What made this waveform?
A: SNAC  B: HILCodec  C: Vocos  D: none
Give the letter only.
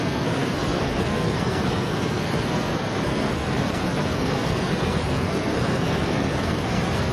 A